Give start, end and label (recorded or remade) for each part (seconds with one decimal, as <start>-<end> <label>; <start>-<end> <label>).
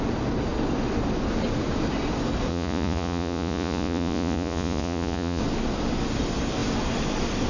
0.0-2.5 recorded; 2.5-5.4 remade; 5.4-7.5 recorded